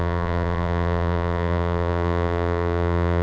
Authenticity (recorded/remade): remade